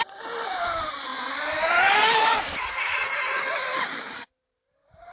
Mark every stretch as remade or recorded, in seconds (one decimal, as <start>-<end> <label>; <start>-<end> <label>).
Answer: 0.0-5.1 recorded